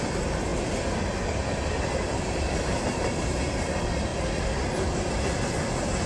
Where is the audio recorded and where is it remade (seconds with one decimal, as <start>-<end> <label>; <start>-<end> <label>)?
0.0-6.1 remade